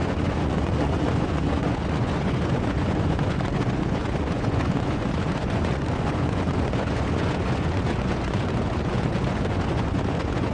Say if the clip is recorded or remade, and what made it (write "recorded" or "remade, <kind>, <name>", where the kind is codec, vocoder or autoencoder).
remade, vocoder, Vocos